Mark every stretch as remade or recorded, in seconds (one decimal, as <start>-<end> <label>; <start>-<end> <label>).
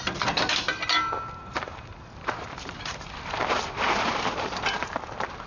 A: 0.0-1.5 recorded; 1.5-4.8 remade; 4.8-5.5 recorded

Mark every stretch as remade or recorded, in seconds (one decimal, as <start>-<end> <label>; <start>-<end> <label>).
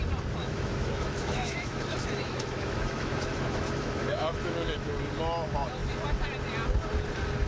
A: 0.0-0.4 recorded; 0.4-4.9 remade; 4.9-7.5 recorded